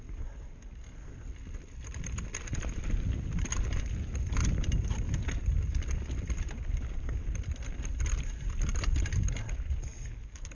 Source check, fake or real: real